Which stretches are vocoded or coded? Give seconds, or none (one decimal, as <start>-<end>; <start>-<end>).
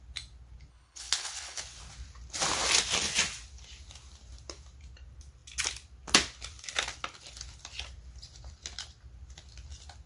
0.7-1.6